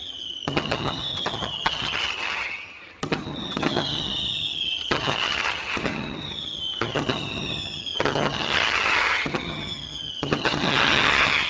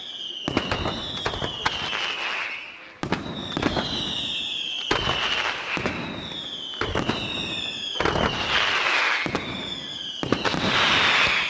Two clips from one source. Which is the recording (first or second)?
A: second